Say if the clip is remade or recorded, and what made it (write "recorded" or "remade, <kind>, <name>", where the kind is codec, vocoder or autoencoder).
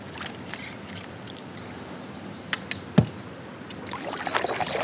recorded